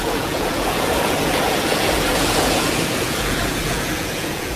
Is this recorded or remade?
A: remade